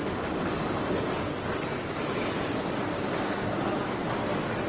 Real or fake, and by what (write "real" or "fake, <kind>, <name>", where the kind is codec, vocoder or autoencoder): real